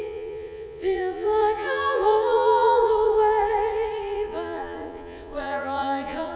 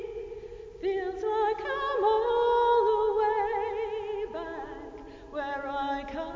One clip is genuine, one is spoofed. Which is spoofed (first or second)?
first